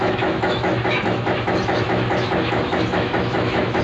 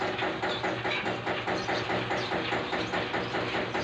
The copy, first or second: first